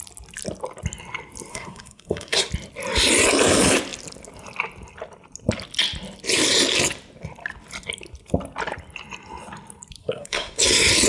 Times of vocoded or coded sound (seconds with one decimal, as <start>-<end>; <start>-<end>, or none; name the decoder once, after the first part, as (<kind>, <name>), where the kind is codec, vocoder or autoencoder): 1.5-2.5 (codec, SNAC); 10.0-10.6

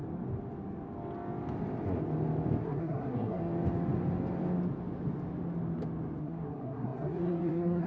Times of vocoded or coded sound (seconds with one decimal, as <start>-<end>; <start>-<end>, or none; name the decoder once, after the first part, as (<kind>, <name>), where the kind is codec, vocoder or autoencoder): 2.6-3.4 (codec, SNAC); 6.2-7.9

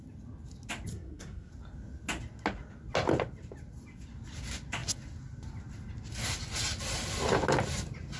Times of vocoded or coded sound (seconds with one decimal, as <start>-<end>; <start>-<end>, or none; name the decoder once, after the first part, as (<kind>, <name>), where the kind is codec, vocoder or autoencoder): 0.9-1.5 (codec, SNAC)

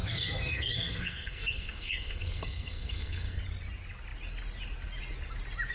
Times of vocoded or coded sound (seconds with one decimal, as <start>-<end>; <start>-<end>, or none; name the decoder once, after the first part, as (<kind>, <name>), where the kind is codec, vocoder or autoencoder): 0.0-3.4 (codec, SNAC)

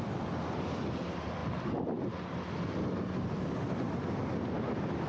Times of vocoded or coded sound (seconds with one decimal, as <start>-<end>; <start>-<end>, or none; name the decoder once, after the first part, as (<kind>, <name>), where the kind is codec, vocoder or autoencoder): none